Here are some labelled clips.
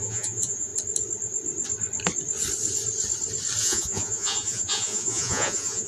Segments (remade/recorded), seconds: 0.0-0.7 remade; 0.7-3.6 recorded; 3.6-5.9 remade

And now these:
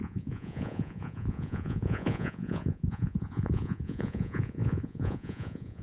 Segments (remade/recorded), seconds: 0.0-5.8 remade

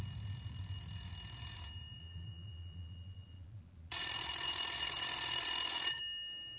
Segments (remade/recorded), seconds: 0.0-2.0 recorded; 2.0-6.0 remade; 6.0-6.6 recorded

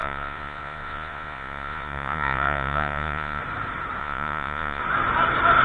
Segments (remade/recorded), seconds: 0.0-3.4 remade; 3.4-4.0 recorded; 4.0-4.8 remade; 4.8-5.6 recorded